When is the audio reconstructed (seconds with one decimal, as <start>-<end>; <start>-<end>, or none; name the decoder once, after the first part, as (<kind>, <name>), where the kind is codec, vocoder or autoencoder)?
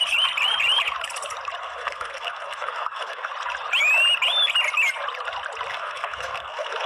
1.6-3.3 (codec, SNAC); 5.7-6.9